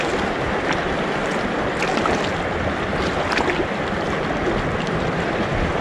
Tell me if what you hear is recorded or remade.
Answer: recorded